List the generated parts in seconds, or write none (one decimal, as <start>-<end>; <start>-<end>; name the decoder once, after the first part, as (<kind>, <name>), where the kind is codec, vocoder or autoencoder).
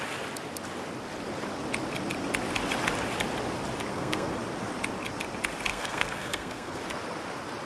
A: 3.9-4.4 (codec, SNAC); 5.7-6.8